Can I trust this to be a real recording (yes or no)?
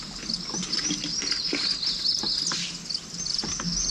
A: yes